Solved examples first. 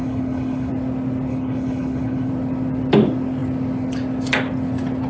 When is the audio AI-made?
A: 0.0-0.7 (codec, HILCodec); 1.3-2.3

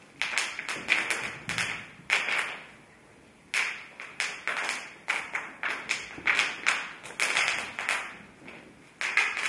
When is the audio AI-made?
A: none

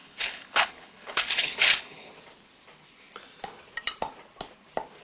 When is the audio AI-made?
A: 0.0-2.1 (codec, HILCodec)

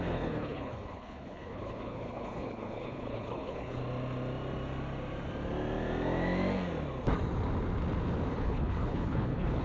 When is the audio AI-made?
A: 0.0-3.8 (codec, HILCodec); 8.3-9.6

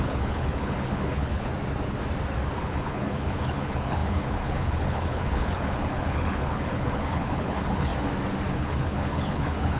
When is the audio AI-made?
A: 0.0-1.5 (codec, HILCodec); 2.6-7.9; 8.5-9.8

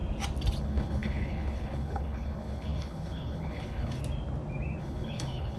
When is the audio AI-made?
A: 0.6-4.0 (codec, HILCodec); 4.8-5.6

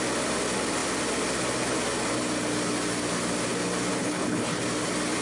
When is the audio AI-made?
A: 4.0-4.6 (codec, HILCodec)